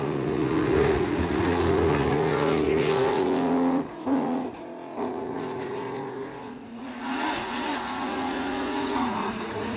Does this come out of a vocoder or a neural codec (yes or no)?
yes